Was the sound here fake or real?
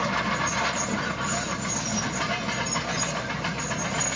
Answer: real